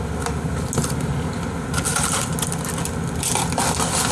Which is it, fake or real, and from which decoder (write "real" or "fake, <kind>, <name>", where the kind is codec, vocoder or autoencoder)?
real